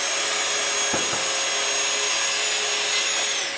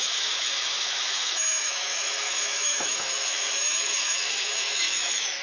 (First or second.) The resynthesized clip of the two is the second